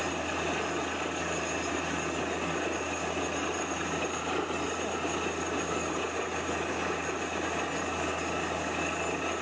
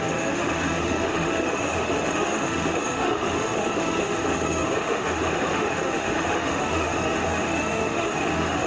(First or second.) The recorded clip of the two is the first